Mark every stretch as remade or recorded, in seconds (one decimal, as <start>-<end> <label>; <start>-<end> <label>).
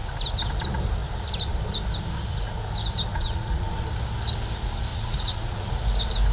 0.0-3.1 recorded; 3.1-3.7 remade; 3.7-4.9 recorded; 4.9-5.7 remade; 5.7-6.3 recorded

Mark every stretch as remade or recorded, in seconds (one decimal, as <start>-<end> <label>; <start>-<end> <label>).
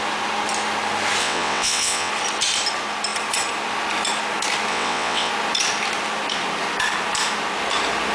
0.0-1.2 recorded; 1.2-2.1 remade; 2.1-4.7 recorded; 4.7-5.3 remade; 5.3-8.1 recorded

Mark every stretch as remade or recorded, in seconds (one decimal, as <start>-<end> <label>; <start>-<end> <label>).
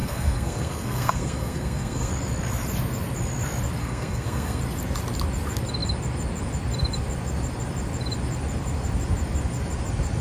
0.0-2.1 remade; 2.1-3.8 recorded; 3.8-4.6 remade; 4.6-10.2 recorded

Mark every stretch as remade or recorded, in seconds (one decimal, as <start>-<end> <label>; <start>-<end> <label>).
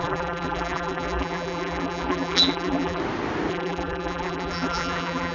0.0-3.0 remade; 3.0-3.5 recorded; 3.5-5.3 remade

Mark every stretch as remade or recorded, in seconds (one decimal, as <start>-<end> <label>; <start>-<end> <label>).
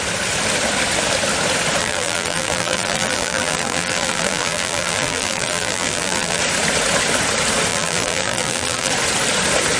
0.0-1.8 recorded; 1.8-6.4 remade; 6.4-7.7 recorded; 7.7-8.9 remade; 8.9-9.8 recorded